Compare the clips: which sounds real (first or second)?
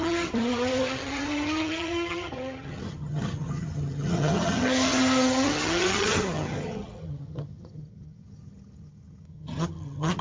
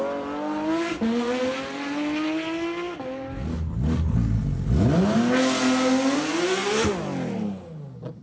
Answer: second